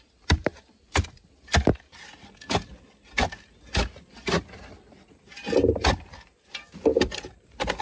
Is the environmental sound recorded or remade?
recorded